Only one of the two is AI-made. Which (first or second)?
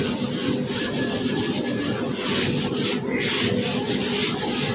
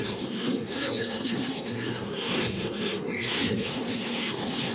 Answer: second